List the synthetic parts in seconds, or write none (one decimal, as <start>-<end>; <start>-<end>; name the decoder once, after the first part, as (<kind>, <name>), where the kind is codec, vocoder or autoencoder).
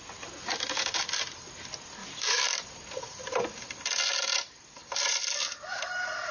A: 2.0-3.8 (vocoder, BigVGAN v2); 4.8-5.4